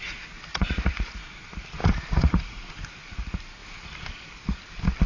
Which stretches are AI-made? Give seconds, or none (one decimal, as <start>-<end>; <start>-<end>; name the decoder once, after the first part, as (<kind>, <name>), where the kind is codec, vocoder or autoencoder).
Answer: 0.5-1.2 (vocoder, Vocos); 1.8-2.7